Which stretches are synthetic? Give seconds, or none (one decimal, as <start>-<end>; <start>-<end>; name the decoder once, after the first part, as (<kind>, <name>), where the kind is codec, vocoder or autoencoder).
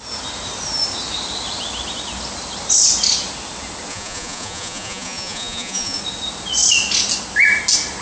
3.9-6.0 (vocoder, Vocos)